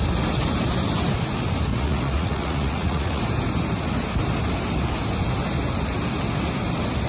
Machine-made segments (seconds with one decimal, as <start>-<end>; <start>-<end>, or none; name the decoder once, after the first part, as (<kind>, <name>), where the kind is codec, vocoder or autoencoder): 1.7-3.2 (vocoder, Vocos)